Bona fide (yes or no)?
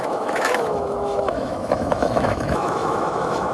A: no